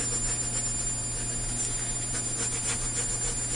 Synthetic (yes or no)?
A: no